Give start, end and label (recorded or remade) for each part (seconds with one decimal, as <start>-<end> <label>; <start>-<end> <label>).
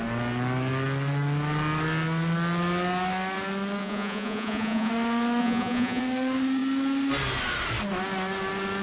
0.0-3.8 recorded; 3.8-4.9 remade; 4.9-5.4 recorded; 5.4-6.0 remade; 6.0-8.8 recorded